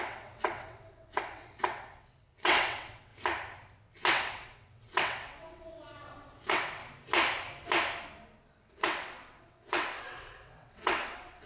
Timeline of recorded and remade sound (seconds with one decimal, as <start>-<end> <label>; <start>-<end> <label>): 0.0-3.1 remade; 3.1-4.1 recorded; 4.1-6.8 remade; 6.8-8.6 recorded; 8.6-11.5 remade